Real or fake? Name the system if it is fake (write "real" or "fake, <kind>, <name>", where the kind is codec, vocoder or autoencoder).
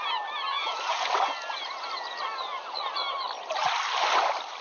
real